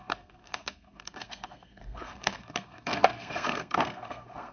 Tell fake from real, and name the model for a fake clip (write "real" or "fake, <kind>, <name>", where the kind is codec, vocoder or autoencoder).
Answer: fake, codec, SNAC